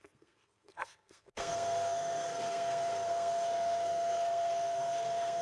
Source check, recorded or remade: remade